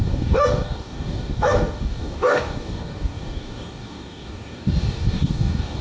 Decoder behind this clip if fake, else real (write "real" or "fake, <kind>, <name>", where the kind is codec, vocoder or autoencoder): fake, codec, DAC